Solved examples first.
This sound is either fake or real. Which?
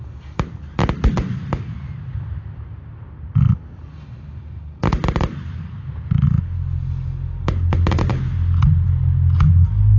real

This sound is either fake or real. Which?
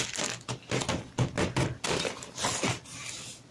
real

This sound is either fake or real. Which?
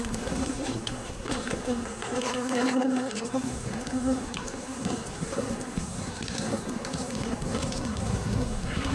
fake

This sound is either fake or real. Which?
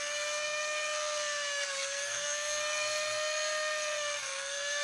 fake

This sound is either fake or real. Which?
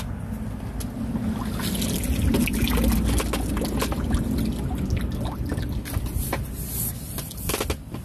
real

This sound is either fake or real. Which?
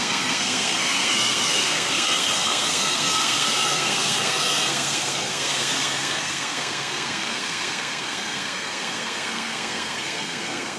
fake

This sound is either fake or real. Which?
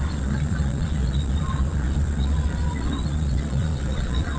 fake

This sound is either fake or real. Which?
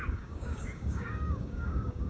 fake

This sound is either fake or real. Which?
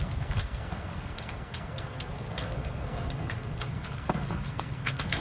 fake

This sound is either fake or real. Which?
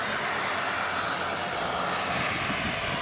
real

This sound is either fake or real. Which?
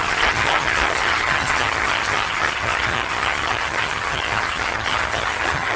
fake